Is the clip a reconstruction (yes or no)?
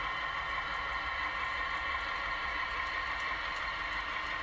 no